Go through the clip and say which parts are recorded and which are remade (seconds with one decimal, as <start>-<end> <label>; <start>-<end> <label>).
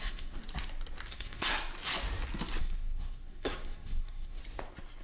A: 0.0-0.4 remade; 0.4-1.1 recorded; 1.1-1.5 remade; 1.5-2.6 recorded; 2.6-4.4 remade; 4.4-5.0 recorded